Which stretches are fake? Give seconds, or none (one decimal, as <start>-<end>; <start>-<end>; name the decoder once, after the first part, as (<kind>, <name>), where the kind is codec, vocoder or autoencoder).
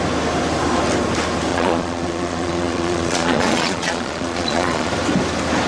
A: 1.5-4.9 (vocoder, Vocos)